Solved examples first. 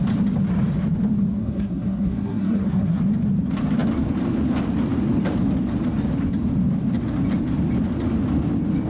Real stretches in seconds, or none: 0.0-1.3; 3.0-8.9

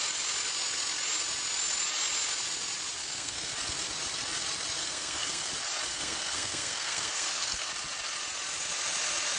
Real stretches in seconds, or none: 0.0-3.0; 3.5-4.8; 5.5-5.9; 7.7-9.4

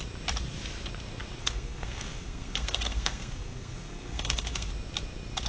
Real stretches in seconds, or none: 0.0-1.4; 4.7-5.5

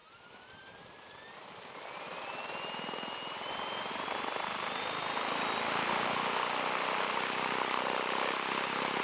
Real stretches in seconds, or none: 0.0-9.0